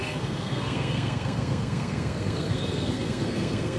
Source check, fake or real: fake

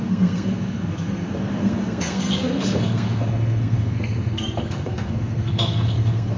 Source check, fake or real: fake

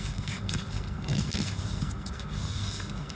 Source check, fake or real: fake